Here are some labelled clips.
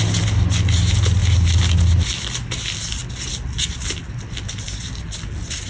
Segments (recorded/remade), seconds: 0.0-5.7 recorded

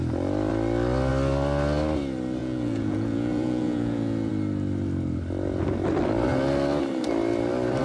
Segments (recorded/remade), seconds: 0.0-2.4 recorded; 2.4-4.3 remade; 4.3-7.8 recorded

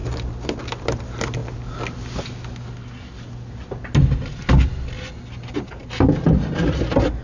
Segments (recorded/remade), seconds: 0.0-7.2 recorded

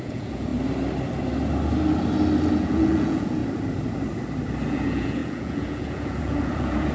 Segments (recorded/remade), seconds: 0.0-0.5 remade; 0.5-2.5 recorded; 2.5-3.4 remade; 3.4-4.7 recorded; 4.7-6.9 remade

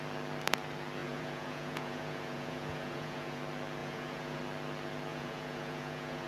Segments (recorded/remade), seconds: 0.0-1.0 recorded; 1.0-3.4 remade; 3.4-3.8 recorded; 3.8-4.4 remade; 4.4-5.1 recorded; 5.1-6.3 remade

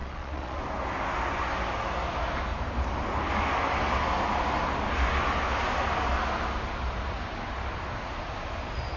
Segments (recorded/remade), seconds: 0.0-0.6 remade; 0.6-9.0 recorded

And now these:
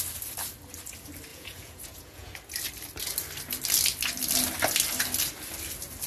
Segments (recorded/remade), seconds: 0.0-1.3 recorded; 1.3-2.3 remade; 2.3-6.1 recorded